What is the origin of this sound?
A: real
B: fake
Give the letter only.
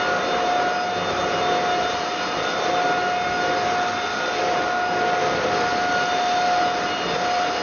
A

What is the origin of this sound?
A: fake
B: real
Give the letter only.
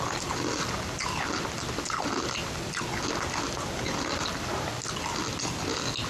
B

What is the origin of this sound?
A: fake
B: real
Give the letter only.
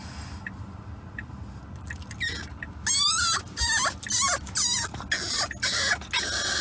B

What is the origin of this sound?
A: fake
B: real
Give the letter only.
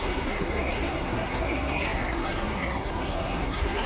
A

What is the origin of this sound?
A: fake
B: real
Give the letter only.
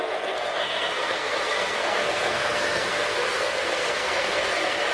A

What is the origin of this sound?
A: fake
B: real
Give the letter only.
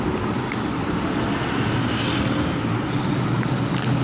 B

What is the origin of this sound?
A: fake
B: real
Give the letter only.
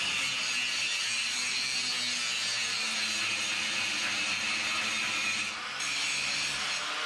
B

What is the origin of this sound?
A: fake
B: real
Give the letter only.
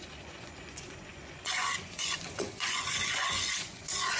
A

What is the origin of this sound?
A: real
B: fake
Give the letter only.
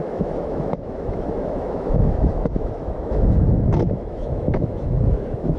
B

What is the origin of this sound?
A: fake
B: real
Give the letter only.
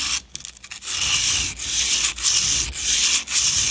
B